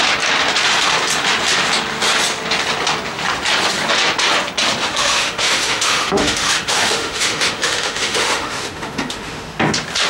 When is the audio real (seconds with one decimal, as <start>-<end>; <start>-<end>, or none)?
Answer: 0.0-4.8; 9.6-10.1